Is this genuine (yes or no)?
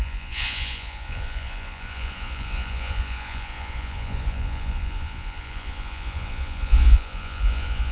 no